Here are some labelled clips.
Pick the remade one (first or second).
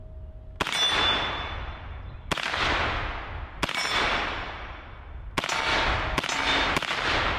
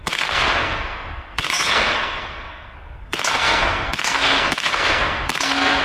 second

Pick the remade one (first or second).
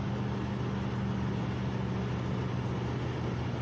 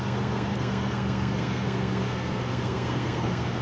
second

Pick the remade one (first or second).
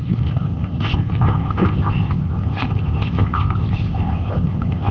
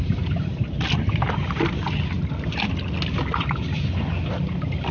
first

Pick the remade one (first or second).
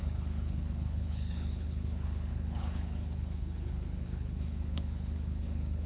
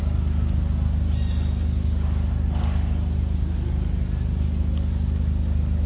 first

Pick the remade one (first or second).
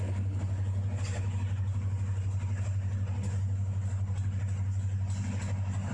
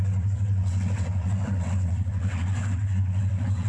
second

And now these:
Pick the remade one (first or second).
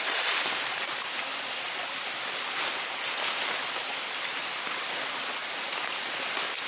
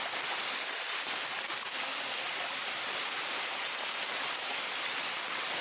second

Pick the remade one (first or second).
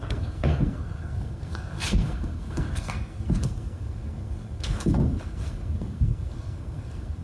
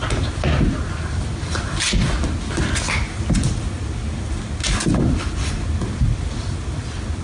first